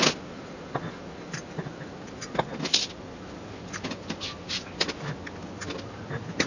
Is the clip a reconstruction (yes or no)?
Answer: no